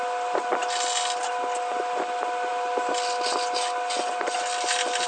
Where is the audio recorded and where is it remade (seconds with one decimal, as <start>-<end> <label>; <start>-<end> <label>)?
0.0-5.1 recorded